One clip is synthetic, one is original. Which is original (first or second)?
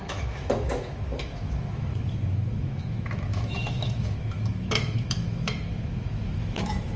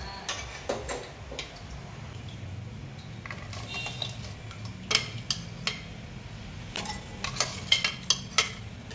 second